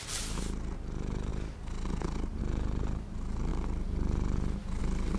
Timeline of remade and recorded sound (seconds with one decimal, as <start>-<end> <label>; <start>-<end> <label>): 0.0-5.2 recorded